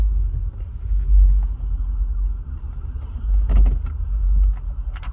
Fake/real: real